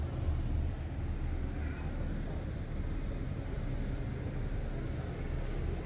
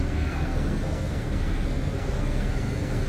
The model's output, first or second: second